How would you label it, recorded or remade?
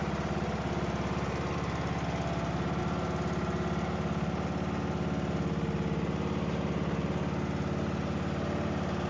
recorded